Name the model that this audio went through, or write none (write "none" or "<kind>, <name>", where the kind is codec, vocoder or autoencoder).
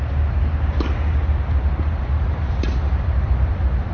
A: none